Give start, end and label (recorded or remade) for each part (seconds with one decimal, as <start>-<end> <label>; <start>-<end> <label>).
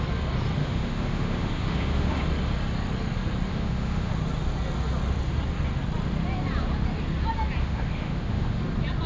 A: 0.0-0.6 recorded; 0.6-2.2 remade; 2.2-3.5 recorded; 3.5-4.1 remade; 4.1-7.6 recorded; 7.6-8.6 remade; 8.6-9.1 recorded